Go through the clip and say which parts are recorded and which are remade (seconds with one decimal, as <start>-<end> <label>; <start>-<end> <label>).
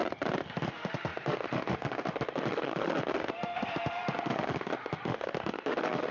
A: 0.0-0.5 recorded; 0.5-6.1 remade